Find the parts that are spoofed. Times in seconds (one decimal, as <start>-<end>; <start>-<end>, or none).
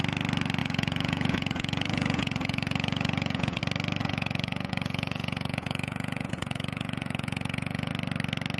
0.6-3.6; 4.0-7.9